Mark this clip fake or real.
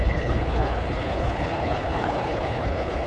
fake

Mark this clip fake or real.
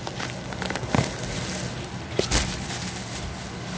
real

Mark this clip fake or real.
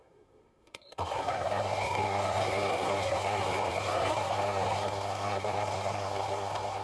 fake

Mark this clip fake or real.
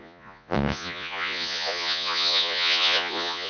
fake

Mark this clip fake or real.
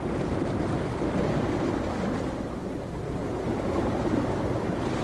real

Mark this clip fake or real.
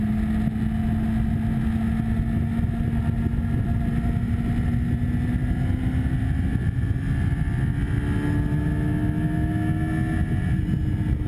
real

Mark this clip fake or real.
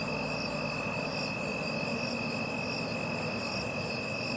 real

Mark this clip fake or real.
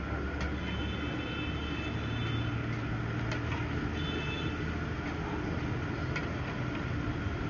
real